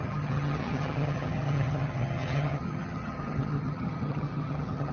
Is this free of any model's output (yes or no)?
no